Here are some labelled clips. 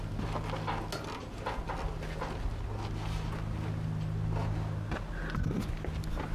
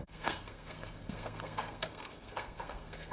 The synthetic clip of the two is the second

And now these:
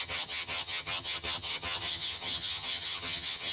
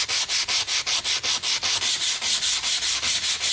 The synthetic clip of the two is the first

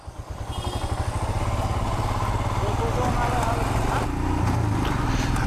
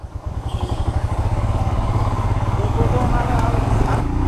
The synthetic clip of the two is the second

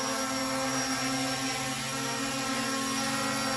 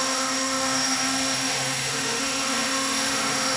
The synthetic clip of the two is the second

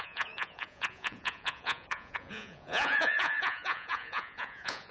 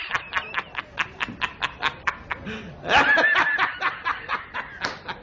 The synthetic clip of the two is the first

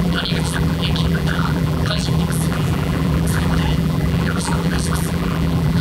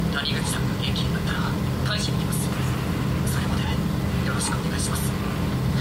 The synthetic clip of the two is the first